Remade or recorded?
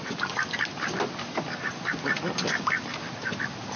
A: recorded